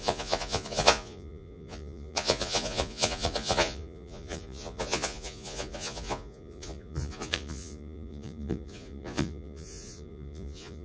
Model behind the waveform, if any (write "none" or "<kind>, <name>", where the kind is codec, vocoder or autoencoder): vocoder, Vocos